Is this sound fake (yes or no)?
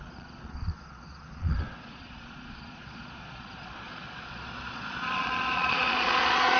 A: yes